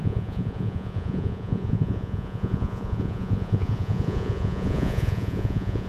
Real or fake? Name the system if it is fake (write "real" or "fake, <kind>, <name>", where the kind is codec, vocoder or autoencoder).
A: fake, vocoder, Vocos